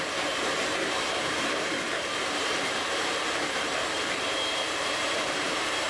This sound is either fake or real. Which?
fake